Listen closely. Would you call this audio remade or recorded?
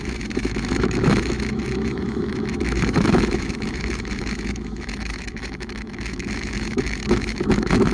remade